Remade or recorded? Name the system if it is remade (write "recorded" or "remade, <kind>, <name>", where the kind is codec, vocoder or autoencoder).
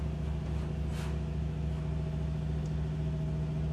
recorded